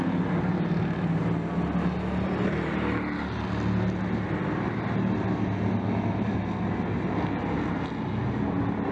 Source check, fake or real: real